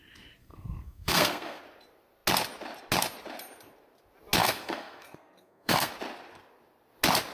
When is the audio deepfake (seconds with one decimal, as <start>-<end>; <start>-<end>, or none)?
0.4-1.6; 4.4-5.9